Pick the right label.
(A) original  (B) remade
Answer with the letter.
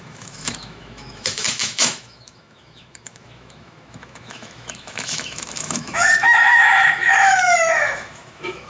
B